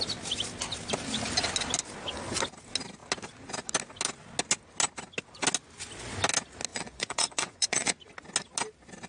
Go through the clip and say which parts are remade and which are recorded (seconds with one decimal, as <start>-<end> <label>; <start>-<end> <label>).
0.0-6.7 recorded; 6.7-7.9 remade; 7.9-9.1 recorded